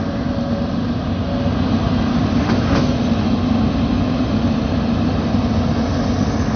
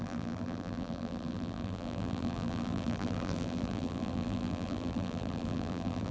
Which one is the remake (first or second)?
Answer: second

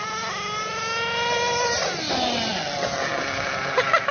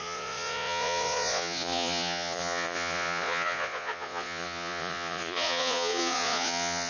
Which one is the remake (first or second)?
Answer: second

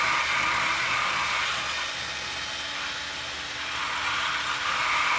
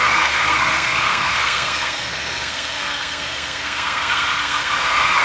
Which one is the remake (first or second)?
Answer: second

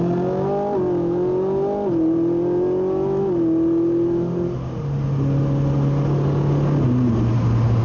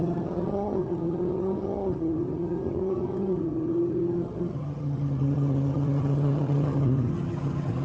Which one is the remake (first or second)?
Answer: second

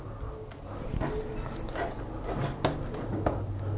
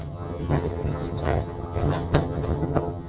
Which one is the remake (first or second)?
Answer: second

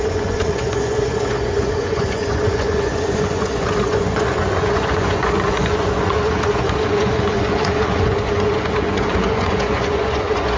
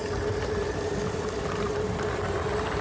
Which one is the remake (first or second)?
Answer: first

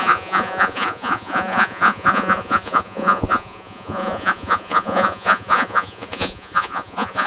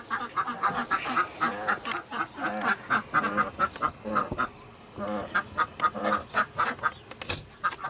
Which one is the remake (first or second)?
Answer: first